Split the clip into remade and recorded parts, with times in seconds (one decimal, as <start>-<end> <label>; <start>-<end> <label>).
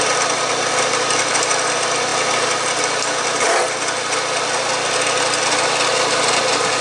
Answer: 0.0-6.8 recorded